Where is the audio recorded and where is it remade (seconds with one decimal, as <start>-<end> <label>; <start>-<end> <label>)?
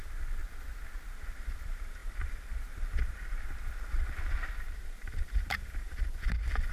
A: 0.0-0.4 remade; 0.4-1.1 recorded; 1.1-6.7 remade